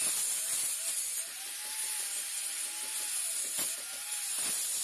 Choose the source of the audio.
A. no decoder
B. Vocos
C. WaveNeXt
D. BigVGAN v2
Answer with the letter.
A